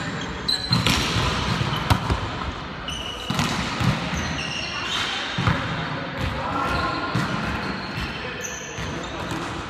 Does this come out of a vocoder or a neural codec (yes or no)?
no